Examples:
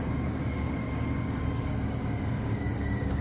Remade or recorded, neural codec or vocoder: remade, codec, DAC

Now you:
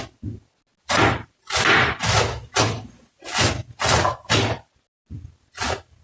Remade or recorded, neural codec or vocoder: recorded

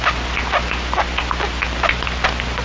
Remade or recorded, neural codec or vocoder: recorded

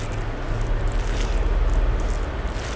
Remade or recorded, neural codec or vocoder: recorded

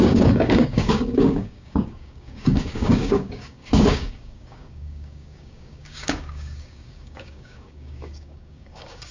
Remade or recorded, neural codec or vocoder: remade, codec, DAC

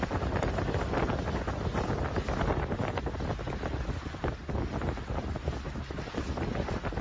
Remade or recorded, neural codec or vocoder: recorded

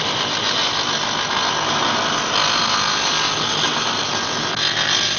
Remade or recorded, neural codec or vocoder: recorded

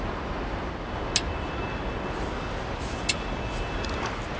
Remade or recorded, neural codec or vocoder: recorded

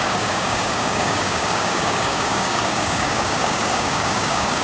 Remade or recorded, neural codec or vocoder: remade, codec, DAC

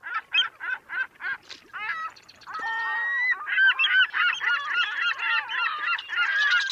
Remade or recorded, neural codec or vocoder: recorded